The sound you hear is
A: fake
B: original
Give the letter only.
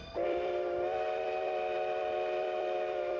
A